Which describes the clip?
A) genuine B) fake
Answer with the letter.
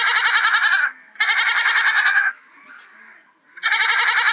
A